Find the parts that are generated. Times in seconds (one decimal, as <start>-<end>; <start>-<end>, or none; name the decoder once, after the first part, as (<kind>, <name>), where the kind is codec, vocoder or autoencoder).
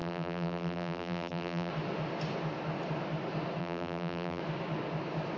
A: 0.0-1.7 (vocoder, BigVGAN v2); 3.6-4.4